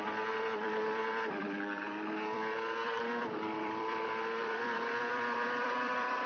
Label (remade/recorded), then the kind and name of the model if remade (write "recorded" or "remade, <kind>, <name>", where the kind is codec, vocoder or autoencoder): remade, vocoder, BigVGAN v2